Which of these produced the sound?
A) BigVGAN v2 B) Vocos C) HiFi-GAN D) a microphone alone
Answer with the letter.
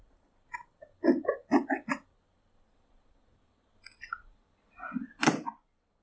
D